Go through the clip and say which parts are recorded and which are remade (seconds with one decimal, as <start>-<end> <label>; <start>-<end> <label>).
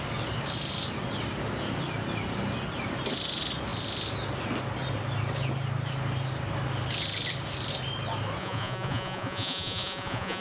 0.0-8.4 recorded; 8.4-10.4 remade